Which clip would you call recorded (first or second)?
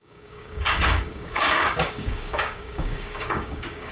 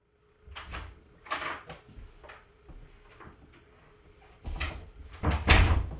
second